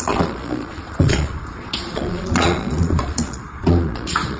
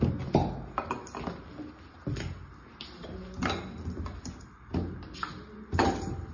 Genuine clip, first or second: second